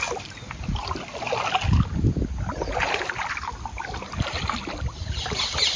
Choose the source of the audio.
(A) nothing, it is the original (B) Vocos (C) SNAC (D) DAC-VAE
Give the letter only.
A